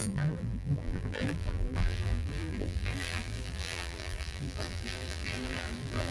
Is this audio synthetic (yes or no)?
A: yes